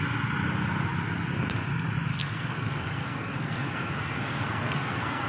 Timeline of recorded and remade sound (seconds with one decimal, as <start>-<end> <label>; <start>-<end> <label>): 0.0-2.1 recorded; 2.1-5.3 remade